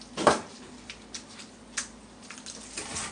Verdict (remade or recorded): recorded